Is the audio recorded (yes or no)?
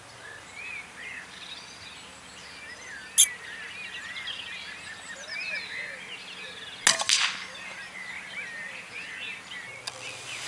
yes